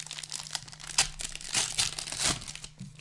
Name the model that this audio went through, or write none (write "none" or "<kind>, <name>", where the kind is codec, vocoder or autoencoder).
none